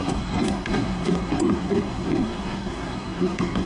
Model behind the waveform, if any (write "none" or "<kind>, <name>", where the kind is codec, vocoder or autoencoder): codec, SNAC